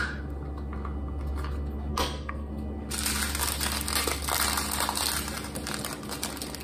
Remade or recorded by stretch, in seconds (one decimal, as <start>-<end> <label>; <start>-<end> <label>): 0.0-1.9 recorded; 1.9-2.5 remade; 2.5-6.6 recorded